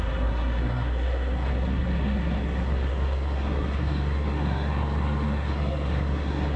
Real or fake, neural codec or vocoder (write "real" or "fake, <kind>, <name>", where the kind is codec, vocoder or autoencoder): fake, codec, SNAC